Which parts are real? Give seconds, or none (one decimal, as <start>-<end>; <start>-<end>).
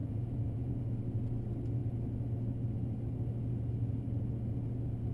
0.8-5.1